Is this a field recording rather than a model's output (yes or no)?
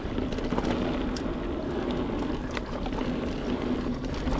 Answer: yes